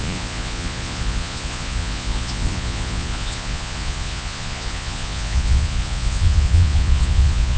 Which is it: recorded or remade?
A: remade